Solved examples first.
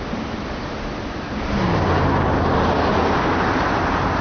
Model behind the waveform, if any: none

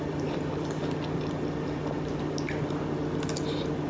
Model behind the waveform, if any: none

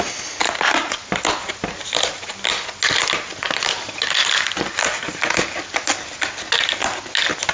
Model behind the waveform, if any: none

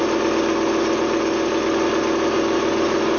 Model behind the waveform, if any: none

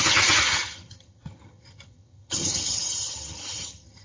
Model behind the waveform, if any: vocoder, HiFi-GAN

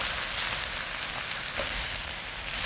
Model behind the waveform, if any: none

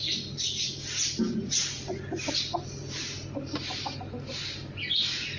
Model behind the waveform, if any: none